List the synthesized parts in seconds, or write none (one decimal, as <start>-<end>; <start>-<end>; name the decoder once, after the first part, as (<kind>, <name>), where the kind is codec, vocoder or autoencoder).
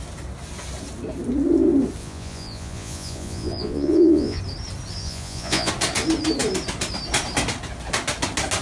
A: 2.0-4.4 (vocoder, Vocos); 5.0-5.7